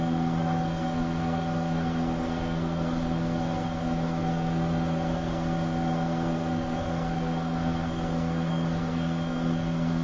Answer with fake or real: fake